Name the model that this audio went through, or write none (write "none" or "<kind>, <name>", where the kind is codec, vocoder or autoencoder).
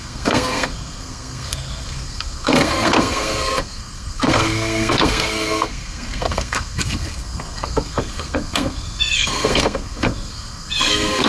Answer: codec, SNAC